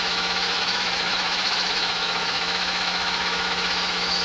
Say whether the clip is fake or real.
fake